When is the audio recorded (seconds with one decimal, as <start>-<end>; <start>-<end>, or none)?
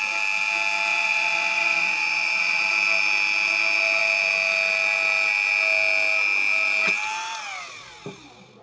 0.0-0.9; 2.6-8.6